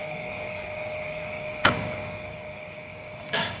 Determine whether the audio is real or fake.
fake